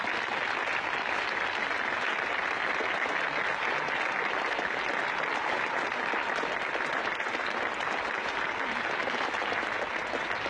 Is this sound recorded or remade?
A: recorded